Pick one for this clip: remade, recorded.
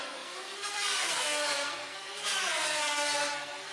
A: remade